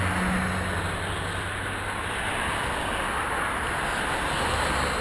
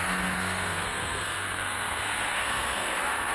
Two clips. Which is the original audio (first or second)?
first